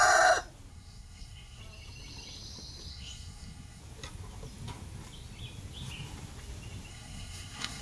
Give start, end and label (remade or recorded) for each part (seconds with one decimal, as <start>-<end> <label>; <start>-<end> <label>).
0.0-0.7 recorded; 0.7-1.6 remade; 1.6-2.9 recorded; 2.9-3.8 remade; 3.8-6.9 recorded; 6.9-7.8 remade